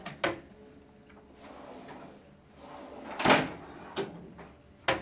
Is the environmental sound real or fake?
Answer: real